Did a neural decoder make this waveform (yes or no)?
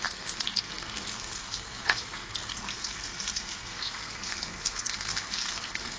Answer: yes